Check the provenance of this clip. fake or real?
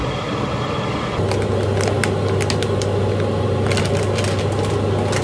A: real